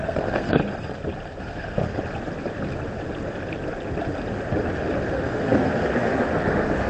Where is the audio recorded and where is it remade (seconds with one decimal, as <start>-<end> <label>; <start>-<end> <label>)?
0.0-0.6 remade; 0.6-1.4 recorded; 1.4-1.8 remade; 1.8-5.1 recorded; 5.1-6.9 remade